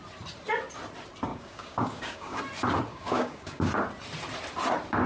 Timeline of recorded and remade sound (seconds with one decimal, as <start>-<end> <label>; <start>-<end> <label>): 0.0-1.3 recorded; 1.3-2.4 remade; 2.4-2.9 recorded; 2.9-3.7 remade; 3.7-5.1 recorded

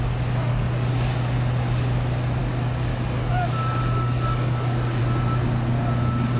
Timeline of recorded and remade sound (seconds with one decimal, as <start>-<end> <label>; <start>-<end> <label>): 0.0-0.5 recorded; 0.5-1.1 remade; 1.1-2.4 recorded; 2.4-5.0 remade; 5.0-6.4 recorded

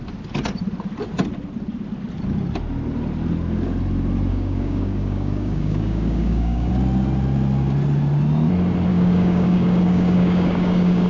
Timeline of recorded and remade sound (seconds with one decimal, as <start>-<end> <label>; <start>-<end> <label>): 0.0-4.3 recorded; 4.3-6.7 remade; 6.7-8.9 recorded; 8.9-11.1 remade

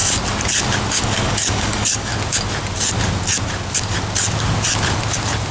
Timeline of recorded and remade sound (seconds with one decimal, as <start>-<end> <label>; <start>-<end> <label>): 0.0-0.9 recorded; 0.9-2.1 remade; 2.1-5.5 recorded

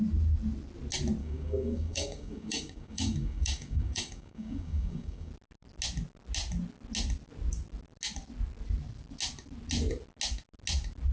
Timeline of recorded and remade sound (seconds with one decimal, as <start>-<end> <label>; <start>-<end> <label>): 0.0-1.2 recorded; 1.2-5.3 remade; 5.3-11.1 recorded